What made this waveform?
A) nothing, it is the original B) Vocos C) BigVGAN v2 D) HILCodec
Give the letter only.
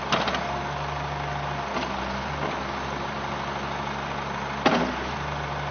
A